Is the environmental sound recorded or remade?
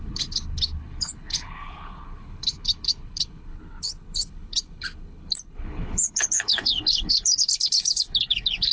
remade